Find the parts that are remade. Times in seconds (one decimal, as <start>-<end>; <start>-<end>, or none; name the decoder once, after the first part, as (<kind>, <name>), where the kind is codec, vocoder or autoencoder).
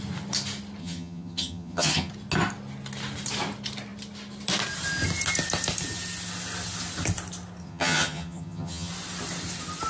0.8-2.1 (vocoder, HiFi-GAN); 7.6-8.9